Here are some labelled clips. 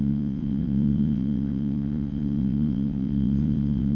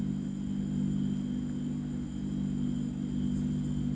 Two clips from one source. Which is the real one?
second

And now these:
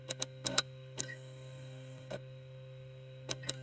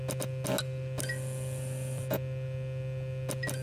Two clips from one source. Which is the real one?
second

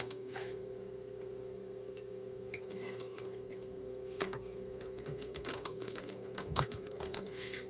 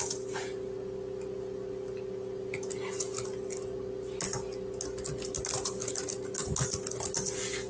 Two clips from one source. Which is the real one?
second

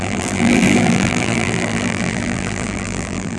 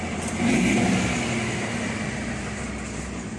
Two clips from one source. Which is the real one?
second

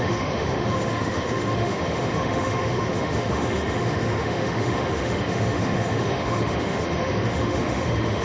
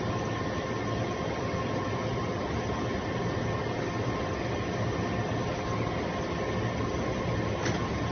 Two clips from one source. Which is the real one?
second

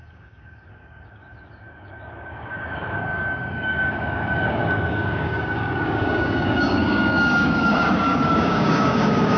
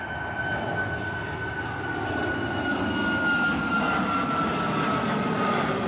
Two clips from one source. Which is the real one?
second